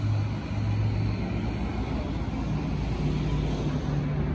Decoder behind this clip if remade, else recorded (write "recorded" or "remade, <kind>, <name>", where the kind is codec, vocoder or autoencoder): recorded